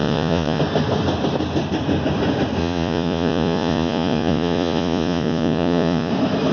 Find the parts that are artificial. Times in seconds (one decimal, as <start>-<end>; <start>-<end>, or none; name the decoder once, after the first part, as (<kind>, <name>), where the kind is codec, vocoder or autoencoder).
0.0-0.6 (vocoder, Vocos); 2.6-6.1

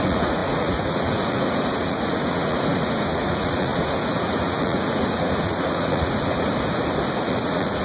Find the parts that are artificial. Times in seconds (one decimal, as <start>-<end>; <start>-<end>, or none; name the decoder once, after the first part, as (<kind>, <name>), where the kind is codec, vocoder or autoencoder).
0.0-6.5 (vocoder, Vocos); 7.1-7.8

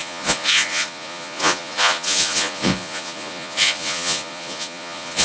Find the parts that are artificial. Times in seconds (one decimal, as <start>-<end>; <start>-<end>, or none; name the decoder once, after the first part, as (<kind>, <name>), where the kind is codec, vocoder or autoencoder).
0.0-5.2 (vocoder, Vocos)

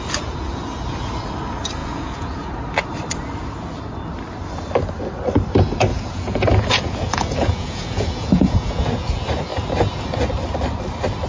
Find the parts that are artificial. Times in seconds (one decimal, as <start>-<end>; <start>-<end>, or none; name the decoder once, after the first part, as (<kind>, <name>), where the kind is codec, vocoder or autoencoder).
1.8-2.5 (vocoder, Vocos); 5.9-8.8

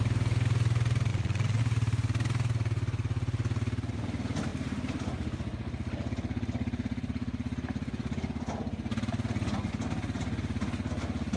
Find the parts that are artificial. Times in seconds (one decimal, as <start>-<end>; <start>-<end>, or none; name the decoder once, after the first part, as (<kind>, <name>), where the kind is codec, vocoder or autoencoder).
1.1-1.6 (vocoder, Vocos)

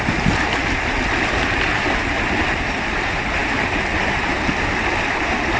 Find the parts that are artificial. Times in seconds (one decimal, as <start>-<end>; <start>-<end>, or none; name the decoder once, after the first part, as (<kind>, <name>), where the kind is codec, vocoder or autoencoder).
none